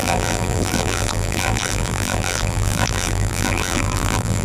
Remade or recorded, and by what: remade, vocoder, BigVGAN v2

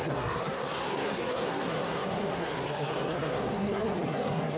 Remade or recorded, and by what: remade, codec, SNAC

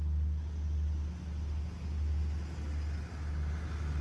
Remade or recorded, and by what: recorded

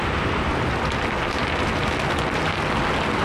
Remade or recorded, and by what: recorded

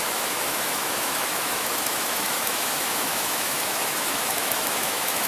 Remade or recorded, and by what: remade, autoencoder, DAC-VAE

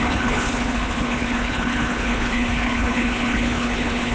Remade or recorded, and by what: remade, codec, HILCodec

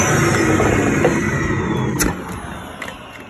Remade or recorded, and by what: recorded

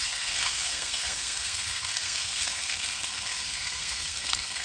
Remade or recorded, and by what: remade, codec, SNAC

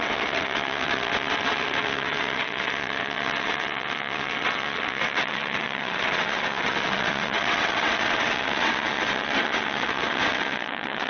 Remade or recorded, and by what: remade, vocoder, WaveNeXt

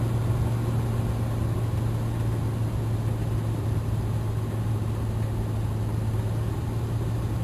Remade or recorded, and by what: recorded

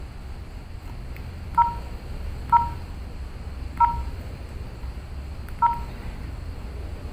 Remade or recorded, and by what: recorded